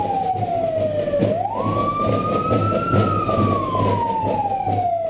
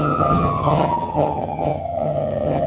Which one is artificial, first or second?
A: second